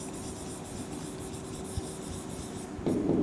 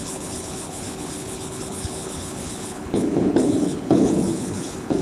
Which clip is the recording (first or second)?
first